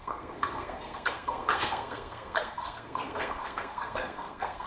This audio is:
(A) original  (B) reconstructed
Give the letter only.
B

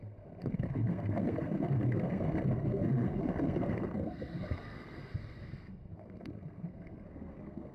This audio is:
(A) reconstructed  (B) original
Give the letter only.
A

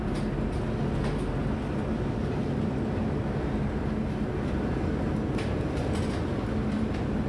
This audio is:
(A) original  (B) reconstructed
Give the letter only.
A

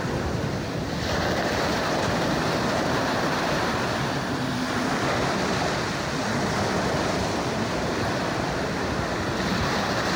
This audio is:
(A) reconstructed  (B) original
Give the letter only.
B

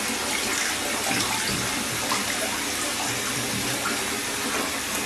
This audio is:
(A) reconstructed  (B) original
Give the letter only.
B